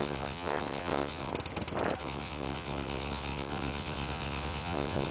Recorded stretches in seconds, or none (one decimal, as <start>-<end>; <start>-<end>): 1.3-2.0